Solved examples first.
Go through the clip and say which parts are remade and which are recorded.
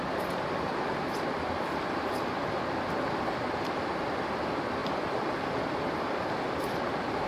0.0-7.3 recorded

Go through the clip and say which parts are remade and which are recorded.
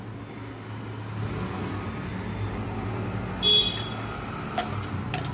0.0-5.3 recorded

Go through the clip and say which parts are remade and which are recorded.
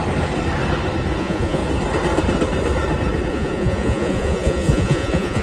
0.0-1.2 recorded; 1.2-1.6 remade; 1.6-3.3 recorded; 3.3-5.4 remade